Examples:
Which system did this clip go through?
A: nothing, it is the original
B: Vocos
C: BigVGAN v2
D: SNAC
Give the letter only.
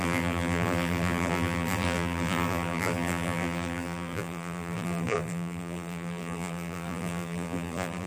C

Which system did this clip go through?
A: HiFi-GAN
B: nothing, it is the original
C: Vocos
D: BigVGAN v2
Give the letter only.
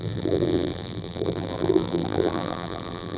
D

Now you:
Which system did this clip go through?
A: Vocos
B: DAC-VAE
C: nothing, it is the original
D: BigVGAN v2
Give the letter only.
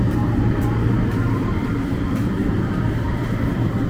D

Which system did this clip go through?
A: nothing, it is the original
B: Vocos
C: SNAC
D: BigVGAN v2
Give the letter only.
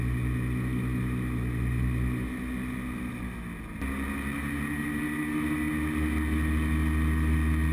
A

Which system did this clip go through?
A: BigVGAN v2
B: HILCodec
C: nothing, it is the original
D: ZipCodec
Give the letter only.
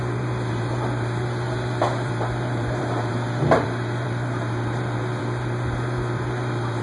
A